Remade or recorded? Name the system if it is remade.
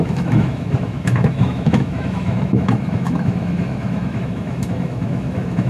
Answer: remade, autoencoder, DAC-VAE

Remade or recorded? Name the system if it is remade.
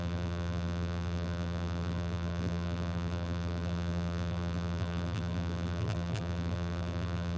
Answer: remade, vocoder, BigVGAN v2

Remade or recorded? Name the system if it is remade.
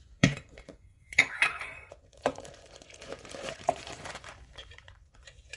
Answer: remade, vocoder, Vocos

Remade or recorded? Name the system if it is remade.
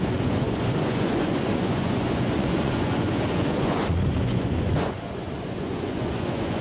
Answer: remade, vocoder, Vocos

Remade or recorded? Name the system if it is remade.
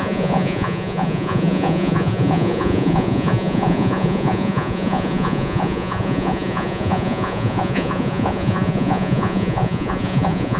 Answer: remade, vocoder, Vocos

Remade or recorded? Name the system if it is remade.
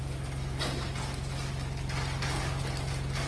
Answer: recorded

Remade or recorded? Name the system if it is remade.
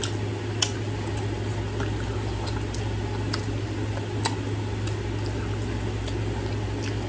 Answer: recorded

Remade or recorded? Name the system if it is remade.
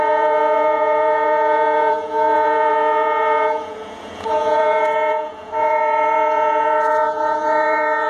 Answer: remade, vocoder, Vocos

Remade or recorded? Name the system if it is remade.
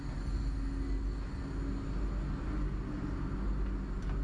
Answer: recorded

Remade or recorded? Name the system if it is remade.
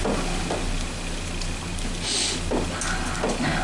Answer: recorded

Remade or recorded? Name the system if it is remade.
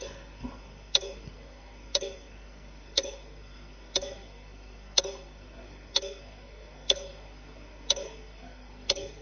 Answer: remade, codec, SNAC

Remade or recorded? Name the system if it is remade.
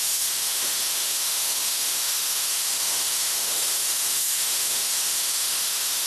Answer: remade, autoencoder, DAC-VAE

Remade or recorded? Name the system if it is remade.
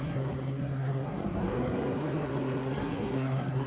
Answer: remade, codec, SNAC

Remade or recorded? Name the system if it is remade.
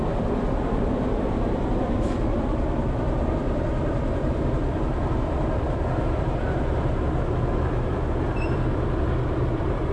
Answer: remade, vocoder, BigVGAN v2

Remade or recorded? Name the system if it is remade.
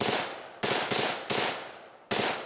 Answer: recorded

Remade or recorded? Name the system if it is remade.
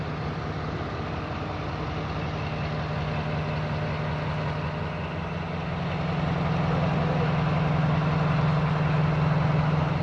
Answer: recorded